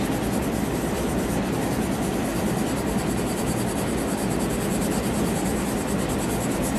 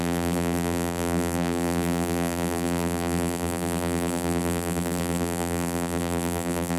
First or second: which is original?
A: first